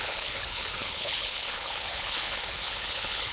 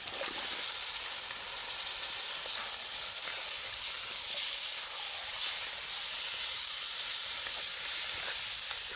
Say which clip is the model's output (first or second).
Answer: first